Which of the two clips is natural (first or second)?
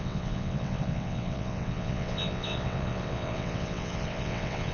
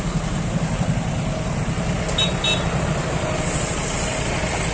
second